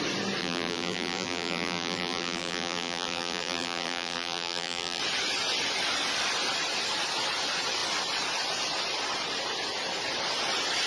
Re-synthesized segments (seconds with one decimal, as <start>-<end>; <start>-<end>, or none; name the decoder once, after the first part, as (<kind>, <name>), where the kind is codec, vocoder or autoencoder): 0.4-5.0 (vocoder, BigVGAN v2)